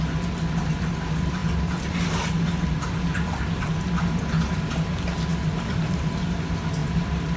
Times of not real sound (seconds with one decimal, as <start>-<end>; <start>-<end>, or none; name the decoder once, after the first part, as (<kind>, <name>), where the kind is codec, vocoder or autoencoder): 5.3-6.1 (vocoder, BigVGAN v2); 6.8-7.4